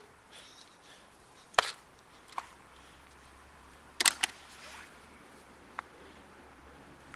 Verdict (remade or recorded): remade